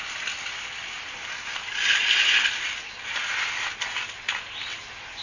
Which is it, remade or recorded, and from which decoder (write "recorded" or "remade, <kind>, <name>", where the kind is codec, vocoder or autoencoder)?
recorded